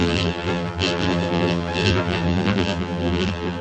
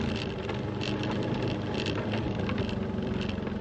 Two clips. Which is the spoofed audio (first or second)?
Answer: first